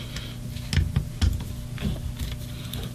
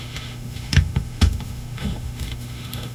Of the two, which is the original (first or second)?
first